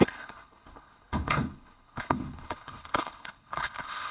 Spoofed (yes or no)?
yes